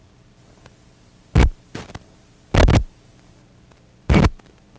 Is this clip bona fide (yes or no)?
yes